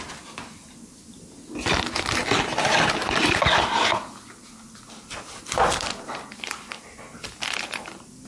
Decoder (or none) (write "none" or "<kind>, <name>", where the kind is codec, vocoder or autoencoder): none